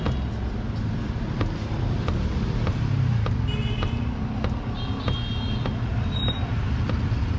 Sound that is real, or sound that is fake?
real